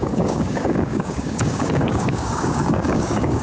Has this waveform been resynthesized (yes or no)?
yes